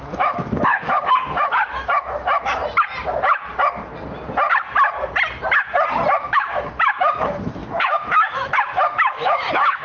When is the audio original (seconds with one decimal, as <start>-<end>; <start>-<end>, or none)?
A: 2.6-6.2